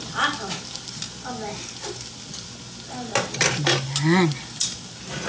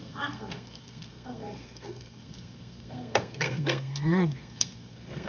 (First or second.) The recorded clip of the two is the first